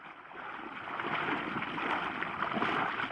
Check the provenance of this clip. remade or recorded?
recorded